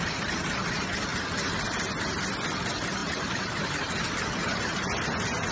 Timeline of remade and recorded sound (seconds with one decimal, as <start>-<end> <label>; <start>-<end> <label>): 0.0-3.0 recorded; 3.0-3.7 remade; 3.7-5.5 recorded